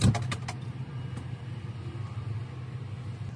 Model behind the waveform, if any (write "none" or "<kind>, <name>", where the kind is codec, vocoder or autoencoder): none